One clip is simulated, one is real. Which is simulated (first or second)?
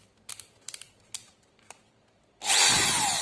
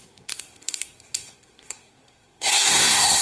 second